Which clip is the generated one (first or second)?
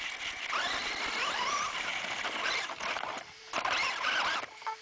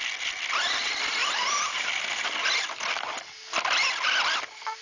first